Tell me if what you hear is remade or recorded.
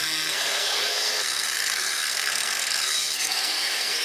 remade